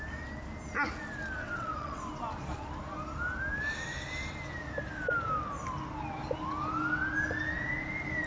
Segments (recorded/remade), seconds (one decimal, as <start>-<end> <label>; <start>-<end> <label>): 0.0-1.4 recorded; 1.4-2.0 remade; 2.0-8.3 recorded